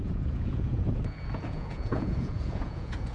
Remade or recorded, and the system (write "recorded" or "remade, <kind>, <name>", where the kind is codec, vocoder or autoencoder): remade, vocoder, Vocos